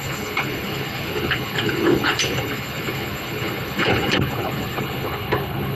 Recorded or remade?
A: remade